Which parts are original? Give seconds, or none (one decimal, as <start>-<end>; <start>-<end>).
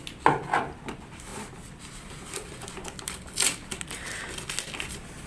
0.0-5.3